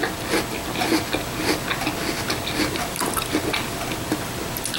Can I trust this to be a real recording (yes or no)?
yes